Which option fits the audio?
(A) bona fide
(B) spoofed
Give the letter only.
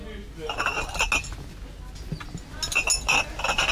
A